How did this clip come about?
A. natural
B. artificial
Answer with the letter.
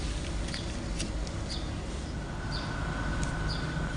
A